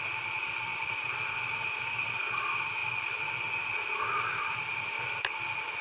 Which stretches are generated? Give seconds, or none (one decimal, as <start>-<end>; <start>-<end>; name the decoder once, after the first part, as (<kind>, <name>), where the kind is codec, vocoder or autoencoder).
none

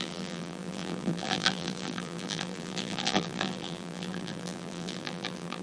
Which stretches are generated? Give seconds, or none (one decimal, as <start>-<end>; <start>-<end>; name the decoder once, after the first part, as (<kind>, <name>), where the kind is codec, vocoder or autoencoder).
0.0-5.6 (vocoder, BigVGAN v2)

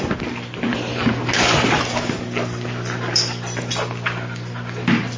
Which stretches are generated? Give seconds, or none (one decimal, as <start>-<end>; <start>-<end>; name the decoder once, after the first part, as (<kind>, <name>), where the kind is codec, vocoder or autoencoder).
none

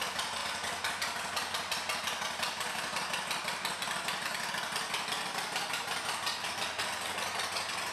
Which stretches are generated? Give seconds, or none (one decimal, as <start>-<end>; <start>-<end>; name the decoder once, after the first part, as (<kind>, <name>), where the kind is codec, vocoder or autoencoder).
none

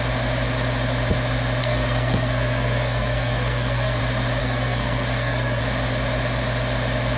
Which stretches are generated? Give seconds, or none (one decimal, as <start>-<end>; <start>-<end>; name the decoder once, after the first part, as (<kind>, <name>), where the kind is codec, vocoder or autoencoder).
1.6-4.0 (codec, SNAC); 4.4-5.6

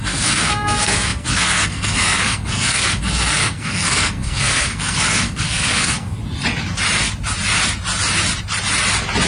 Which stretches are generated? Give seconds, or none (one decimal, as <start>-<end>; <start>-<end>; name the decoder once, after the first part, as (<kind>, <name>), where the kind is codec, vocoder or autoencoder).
0.0-6.2 (codec, SNAC)

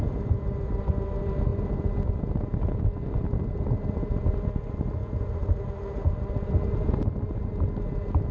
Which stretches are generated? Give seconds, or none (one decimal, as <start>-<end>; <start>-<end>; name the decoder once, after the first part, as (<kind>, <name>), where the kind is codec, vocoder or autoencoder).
none